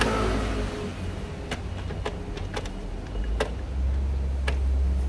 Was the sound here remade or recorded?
recorded